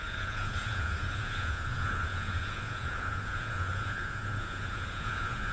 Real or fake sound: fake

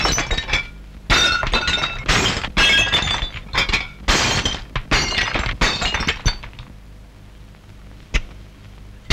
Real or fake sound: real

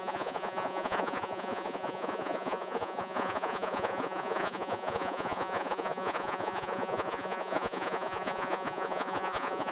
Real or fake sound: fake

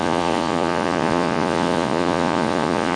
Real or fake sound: fake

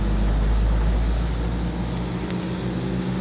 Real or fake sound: real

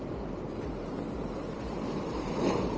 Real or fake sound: real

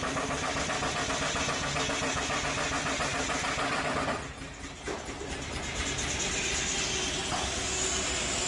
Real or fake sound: real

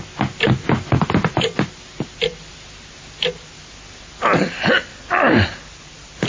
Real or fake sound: real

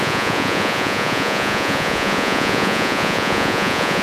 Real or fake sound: fake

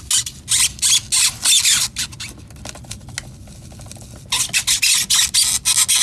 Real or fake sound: real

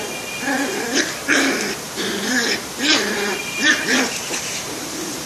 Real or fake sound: fake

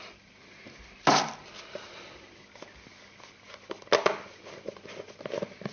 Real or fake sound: real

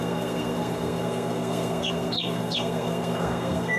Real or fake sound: fake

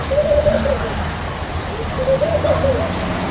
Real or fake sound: real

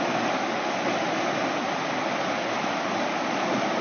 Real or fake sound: real